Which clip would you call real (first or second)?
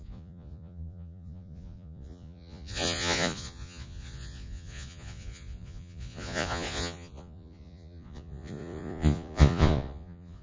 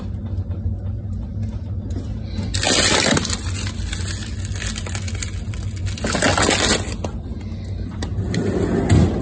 second